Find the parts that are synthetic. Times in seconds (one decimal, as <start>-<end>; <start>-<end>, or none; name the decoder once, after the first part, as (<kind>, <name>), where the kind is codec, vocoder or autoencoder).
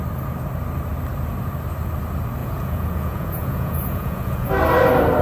2.4-4.5 (vocoder, Vocos)